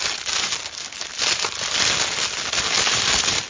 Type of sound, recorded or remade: recorded